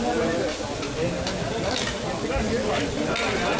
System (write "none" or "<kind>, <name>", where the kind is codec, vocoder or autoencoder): none